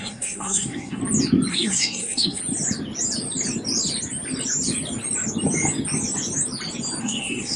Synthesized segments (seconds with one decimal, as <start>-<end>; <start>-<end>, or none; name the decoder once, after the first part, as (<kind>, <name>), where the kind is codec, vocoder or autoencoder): 0.0-1.0 (codec, SNAC); 1.5-2.4; 7.0-7.6

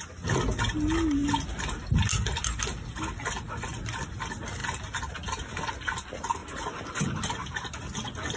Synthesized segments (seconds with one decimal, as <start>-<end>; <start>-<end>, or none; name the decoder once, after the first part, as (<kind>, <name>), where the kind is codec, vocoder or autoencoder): none

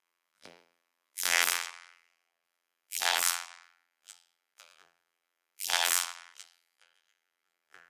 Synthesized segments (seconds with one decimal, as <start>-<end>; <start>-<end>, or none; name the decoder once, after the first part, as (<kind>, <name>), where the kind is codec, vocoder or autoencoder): 0.0-7.9 (vocoder, BigVGAN v2)

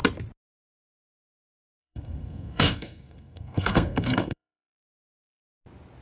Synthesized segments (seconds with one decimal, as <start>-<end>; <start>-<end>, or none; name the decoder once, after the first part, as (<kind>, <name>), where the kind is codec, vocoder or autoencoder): 1.8-5.4 (codec, SNAC)

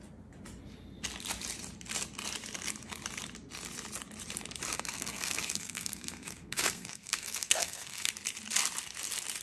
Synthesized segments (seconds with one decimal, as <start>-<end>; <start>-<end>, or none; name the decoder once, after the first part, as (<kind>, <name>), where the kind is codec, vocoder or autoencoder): 4.7-8.1 (codec, SNAC)

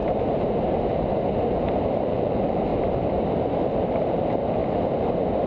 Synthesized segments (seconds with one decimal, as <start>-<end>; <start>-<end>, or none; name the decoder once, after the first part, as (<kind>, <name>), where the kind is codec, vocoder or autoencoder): 2.1-2.7 (vocoder, BigVGAN v2); 3.6-4.6

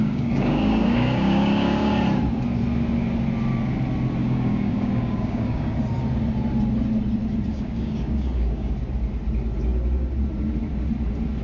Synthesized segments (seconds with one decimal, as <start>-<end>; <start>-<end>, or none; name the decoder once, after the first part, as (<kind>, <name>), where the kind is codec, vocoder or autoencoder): 0.0-1.9 (codec, DAC); 4.2-5.7; 7.5-8.7